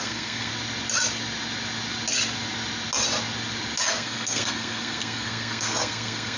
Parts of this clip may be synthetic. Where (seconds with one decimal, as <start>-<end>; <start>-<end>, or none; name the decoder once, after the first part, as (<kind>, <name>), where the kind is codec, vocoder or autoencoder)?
0.0-0.5 (codec, SNAC); 3.9-6.4